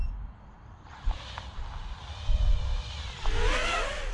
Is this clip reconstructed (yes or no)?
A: no